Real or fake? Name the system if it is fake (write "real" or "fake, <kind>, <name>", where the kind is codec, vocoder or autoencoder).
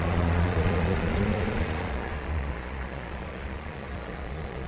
fake, vocoder, Vocos